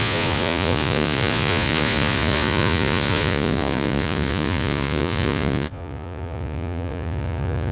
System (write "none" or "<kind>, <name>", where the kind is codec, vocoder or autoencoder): vocoder, Vocos